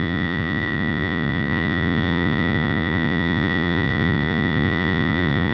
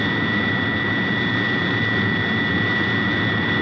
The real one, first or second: second